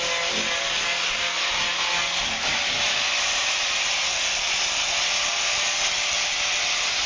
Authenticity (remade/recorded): recorded